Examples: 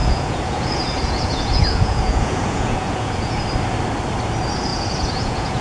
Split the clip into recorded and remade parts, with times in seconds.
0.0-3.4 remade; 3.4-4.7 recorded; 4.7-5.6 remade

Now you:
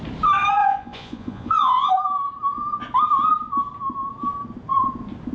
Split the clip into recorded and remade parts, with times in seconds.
0.0-0.6 recorded; 0.6-1.9 remade; 1.9-5.3 recorded

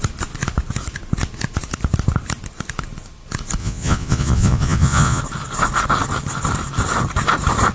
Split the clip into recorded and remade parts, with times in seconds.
0.0-3.6 recorded; 3.6-5.2 remade; 5.2-7.7 recorded

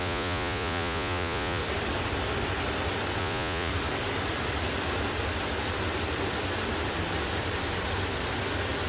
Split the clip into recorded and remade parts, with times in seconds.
0.0-1.6 remade; 1.6-3.2 recorded; 3.2-3.7 remade; 3.7-8.9 recorded

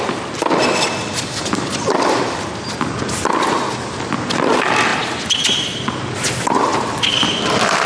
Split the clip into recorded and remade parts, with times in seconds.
0.0-7.9 recorded

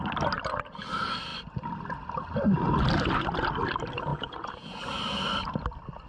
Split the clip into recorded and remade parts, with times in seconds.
0.0-4.1 recorded; 4.1-4.8 remade; 4.8-6.1 recorded

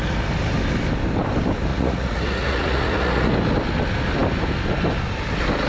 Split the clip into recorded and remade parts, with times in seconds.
0.0-1.7 recorded; 1.7-3.3 remade; 3.3-5.7 recorded

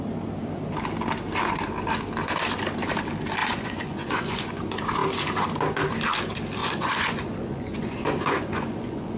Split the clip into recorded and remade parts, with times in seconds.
0.0-3.4 recorded; 3.4-4.6 remade; 4.6-6.6 recorded; 6.6-9.2 remade